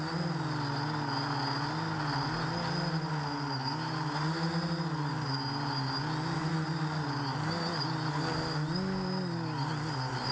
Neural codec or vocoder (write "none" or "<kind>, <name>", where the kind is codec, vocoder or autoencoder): none